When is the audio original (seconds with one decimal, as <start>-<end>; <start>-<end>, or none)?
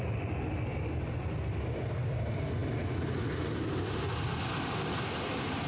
0.0-5.7